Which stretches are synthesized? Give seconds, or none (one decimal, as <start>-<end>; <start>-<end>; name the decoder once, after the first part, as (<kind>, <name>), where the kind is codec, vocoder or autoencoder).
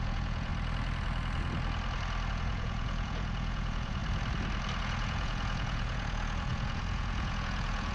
0.0-0.5 (vocoder, Vocos); 2.3-4.0; 4.8-7.9